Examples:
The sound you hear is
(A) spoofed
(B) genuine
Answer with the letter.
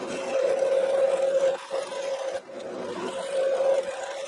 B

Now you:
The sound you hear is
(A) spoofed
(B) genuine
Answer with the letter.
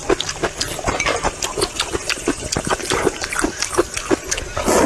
B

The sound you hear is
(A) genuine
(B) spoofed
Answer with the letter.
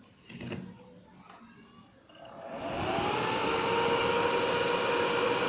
A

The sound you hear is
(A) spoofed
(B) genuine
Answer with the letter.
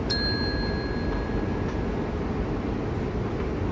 B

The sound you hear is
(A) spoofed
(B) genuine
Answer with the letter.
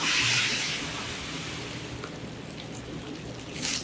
B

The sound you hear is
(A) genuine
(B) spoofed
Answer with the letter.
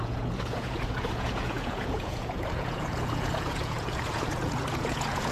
B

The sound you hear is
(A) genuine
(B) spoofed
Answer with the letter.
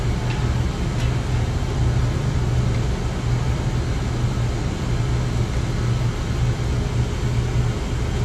A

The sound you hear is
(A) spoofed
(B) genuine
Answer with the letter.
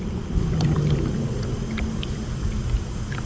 B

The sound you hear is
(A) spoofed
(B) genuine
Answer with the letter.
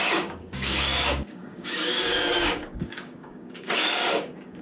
A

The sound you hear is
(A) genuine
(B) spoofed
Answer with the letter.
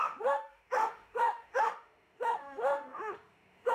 B